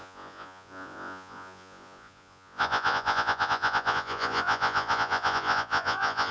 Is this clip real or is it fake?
fake